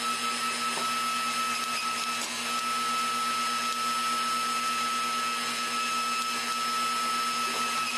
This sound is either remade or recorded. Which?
recorded